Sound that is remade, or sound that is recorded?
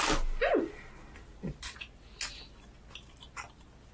recorded